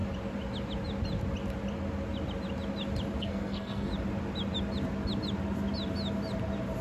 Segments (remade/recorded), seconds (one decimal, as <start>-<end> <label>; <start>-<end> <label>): 0.0-3.2 recorded; 3.2-3.9 remade; 3.9-6.8 recorded